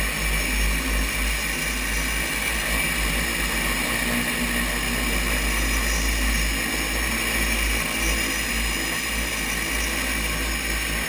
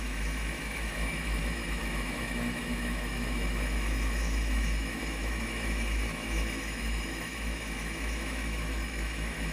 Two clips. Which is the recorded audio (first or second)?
first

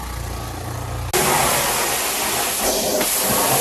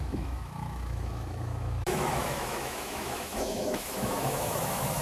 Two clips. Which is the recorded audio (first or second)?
first